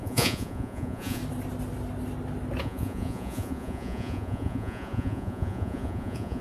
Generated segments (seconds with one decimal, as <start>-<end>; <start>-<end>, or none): 0.0-1.2; 2.6-6.4